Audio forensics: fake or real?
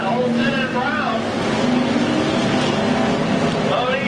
real